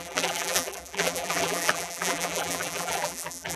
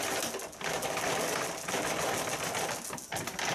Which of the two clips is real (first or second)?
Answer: second